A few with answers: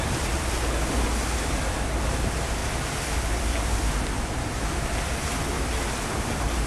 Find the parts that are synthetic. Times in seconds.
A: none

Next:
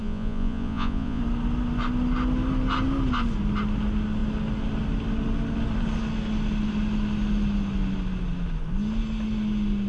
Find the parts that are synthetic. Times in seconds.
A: 0.0-1.2 (vocoder, Vocos)

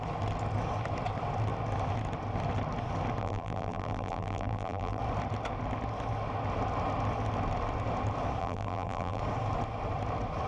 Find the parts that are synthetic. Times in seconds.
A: 3.2-5.0 (vocoder, BigVGAN v2); 8.4-9.2

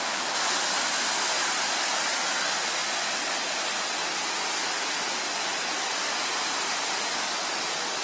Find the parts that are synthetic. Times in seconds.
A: none

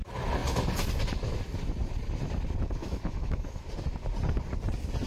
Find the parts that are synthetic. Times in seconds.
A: 2.8-3.7 (autoencoder, DAC-VAE)